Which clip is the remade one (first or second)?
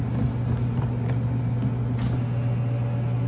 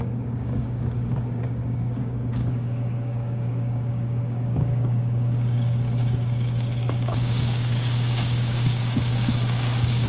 second